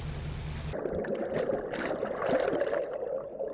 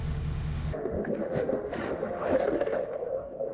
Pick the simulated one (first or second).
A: second